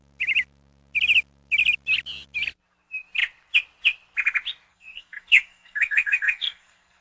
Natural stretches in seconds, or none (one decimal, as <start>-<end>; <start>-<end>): 0.0-4.7